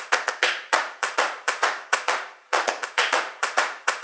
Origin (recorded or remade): remade